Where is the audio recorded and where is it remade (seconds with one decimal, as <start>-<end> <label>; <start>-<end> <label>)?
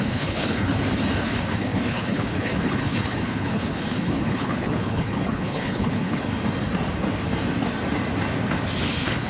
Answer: 0.0-0.7 remade; 0.7-1.2 recorded; 1.2-6.3 remade; 6.3-8.8 recorded; 8.8-9.3 remade